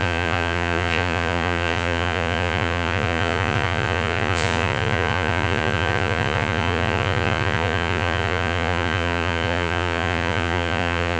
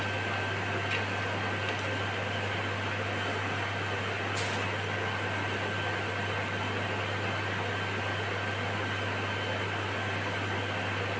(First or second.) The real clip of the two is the second